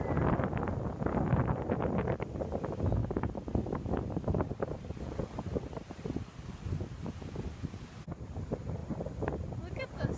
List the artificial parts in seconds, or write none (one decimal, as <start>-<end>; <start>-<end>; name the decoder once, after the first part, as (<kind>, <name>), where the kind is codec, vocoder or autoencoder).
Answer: 3.0-6.9 (vocoder, BigVGAN v2)